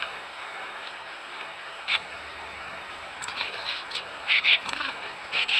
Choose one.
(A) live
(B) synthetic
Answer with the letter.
B